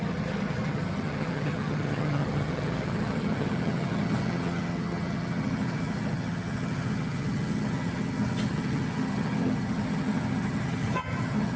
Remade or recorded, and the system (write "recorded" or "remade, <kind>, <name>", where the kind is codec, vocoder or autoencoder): remade, vocoder, HiFi-GAN